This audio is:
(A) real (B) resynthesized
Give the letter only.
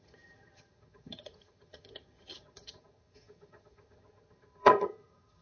B